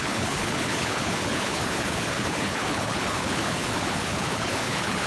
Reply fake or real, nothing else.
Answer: fake